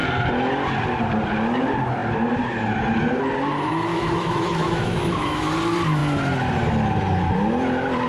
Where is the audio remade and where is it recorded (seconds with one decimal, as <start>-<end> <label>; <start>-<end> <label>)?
0.0-3.9 recorded; 3.9-5.5 remade; 5.5-8.1 recorded